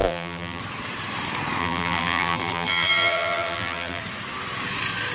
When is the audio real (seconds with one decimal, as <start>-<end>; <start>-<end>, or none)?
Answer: 0.6-1.6; 4.0-5.1